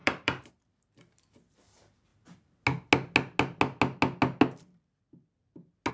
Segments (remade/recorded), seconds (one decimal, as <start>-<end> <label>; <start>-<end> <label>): 0.0-2.1 remade; 2.1-5.9 recorded